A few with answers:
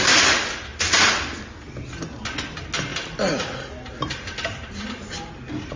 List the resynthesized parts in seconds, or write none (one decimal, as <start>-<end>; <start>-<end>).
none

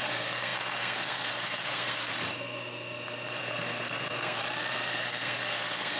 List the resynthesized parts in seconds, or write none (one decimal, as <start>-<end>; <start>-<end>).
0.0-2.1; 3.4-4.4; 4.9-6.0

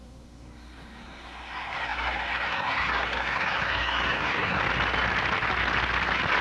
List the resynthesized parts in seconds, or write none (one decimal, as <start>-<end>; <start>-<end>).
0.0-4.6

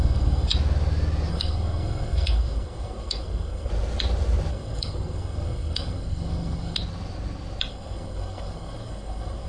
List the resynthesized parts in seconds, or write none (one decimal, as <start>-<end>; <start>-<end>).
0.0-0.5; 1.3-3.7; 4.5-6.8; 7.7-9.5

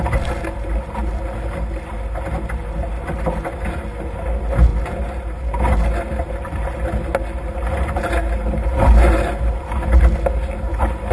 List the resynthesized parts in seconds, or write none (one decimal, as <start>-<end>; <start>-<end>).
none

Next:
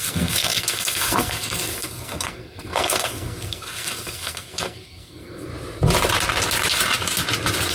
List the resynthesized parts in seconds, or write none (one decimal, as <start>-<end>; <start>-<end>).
0.0-5.5

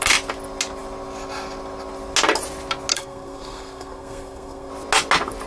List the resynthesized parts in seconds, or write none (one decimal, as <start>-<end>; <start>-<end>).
2.9-4.7

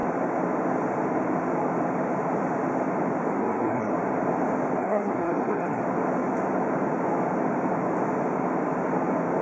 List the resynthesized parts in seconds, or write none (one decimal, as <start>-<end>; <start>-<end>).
3.3-3.9; 4.8-5.8